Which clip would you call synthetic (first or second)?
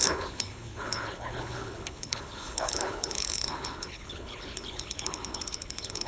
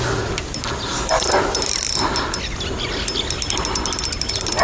first